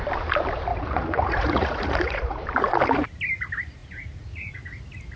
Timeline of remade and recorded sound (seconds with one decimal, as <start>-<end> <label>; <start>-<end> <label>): 0.0-0.7 recorded; 0.7-2.4 remade; 2.4-3.8 recorded; 3.8-4.5 remade; 4.5-5.2 recorded